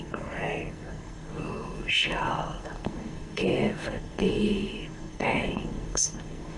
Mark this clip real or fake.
fake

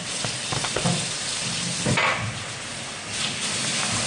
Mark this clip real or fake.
real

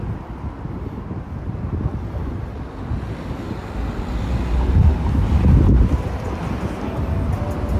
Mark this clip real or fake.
real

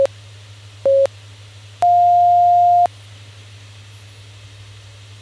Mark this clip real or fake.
real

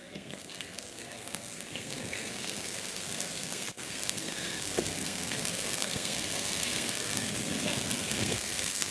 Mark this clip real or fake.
fake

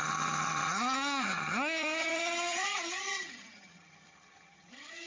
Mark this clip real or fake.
fake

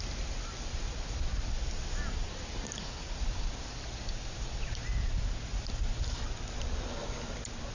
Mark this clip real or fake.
real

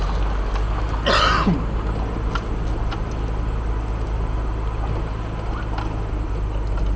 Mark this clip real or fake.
real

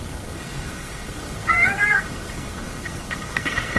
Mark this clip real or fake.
fake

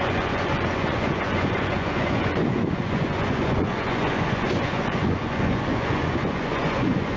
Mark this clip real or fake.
fake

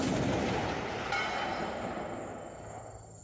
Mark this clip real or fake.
real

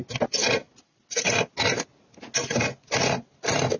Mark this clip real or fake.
real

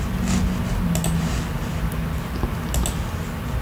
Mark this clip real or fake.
real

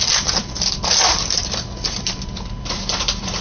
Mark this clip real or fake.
fake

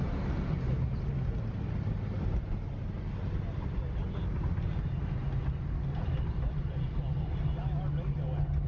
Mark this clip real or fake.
real